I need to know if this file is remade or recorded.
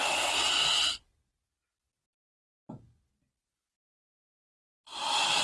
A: recorded